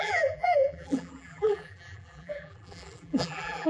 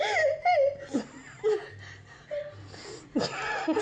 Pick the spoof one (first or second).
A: first